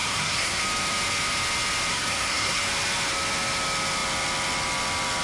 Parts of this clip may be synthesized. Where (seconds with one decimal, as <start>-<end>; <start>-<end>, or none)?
0.0-0.6; 1.9-2.6